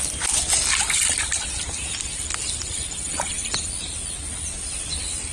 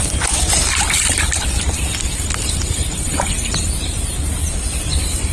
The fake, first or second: second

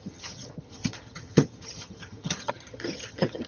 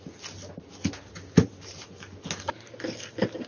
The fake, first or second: first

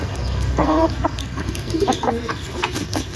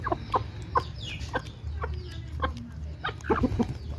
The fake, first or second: first